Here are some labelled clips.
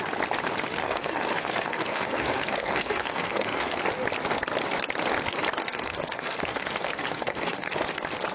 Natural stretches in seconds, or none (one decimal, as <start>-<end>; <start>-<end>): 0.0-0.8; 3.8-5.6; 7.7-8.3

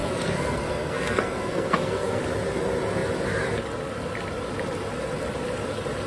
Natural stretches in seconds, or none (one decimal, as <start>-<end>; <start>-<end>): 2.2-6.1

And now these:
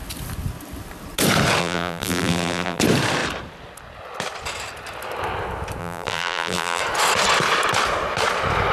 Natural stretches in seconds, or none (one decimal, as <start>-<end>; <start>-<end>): 0.0-1.6; 2.8-5.8; 6.8-8.7

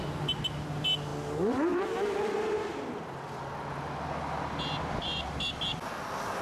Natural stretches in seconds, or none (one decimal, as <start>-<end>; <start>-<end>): 0.0-6.4

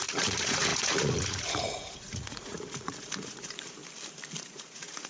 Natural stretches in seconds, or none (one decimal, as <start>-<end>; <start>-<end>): 3.8-4.5

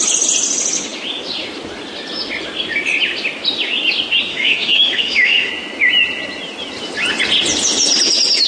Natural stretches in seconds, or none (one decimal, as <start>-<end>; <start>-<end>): 0.0-4.3; 5.5-8.5